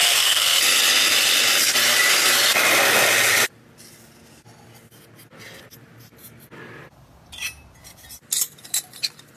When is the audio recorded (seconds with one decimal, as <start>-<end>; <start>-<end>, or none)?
0.6-9.4

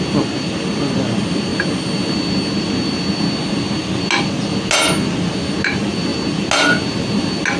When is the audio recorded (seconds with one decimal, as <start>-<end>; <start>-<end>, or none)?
0.0-7.6

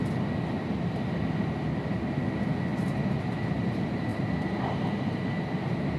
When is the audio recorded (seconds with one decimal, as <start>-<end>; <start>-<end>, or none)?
0.0-6.0

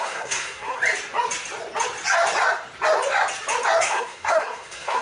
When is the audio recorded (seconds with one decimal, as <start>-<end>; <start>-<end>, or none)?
0.8-3.8

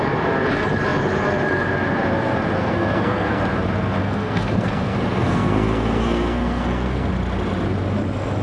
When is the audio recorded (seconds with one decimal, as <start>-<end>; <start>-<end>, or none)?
0.0-2.6; 3.4-4.0; 7.1-8.4